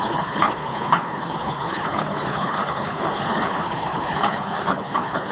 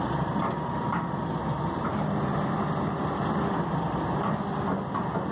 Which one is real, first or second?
second